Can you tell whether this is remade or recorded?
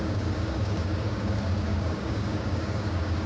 remade